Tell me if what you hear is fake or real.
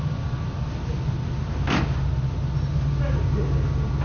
real